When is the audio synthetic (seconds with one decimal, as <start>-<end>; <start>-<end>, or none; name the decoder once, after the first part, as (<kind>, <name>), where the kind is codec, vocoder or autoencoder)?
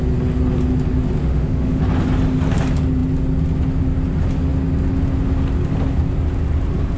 1.2-1.8 (autoencoder, DAC-VAE)